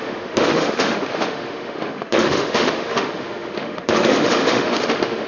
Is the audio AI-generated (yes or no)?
yes